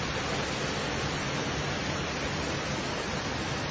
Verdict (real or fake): real